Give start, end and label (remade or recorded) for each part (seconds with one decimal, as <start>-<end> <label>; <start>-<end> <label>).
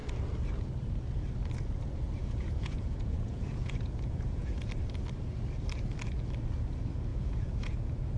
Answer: 0.0-2.2 recorded; 2.2-4.7 remade; 4.7-7.1 recorded; 7.1-8.2 remade